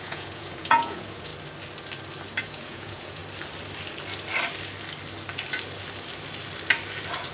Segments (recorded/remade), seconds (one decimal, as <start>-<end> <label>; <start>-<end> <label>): 0.0-1.3 remade; 1.3-2.4 recorded; 2.4-3.2 remade; 3.2-7.3 recorded